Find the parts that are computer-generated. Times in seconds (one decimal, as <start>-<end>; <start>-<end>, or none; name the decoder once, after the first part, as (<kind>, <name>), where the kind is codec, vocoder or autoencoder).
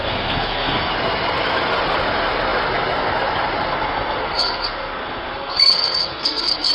0.0-0.9 (codec, SNAC); 3.7-6.7